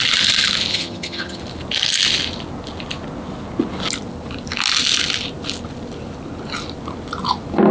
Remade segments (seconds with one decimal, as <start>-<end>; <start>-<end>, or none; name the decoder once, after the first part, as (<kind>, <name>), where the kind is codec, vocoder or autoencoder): 0.7-1.4 (vocoder, HiFi-GAN)